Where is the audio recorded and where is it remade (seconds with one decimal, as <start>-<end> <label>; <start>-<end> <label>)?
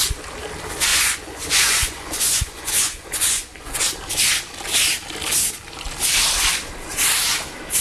0.0-0.9 recorded; 0.9-3.8 remade; 3.8-7.8 recorded